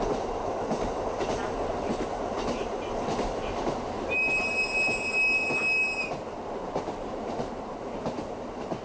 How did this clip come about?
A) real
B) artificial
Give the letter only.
A